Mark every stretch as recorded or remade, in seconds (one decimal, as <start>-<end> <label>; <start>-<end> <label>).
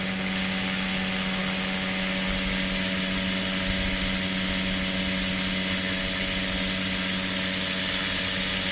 0.0-8.7 recorded